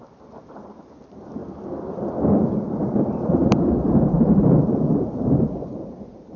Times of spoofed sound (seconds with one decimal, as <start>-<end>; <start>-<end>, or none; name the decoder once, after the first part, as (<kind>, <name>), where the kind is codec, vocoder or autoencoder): 0.0-1.4 (vocoder, BigVGAN v2); 2.4-3.4; 4.1-6.4

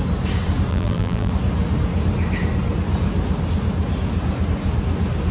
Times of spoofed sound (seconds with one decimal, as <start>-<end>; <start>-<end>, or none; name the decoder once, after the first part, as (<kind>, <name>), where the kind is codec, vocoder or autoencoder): 0.7-1.3 (vocoder, BigVGAN v2)

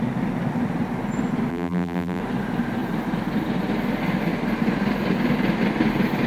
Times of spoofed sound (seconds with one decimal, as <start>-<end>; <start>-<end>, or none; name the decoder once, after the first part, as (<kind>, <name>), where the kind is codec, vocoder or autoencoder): 1.5-2.2 (vocoder, BigVGAN v2)

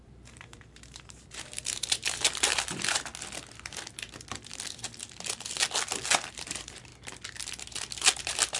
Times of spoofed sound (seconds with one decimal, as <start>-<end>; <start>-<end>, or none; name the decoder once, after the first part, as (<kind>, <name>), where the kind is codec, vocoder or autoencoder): 0.0-3.1 (vocoder, BigVGAN v2); 6.3-6.9; 8.2-8.6